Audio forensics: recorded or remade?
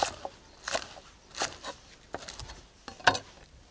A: recorded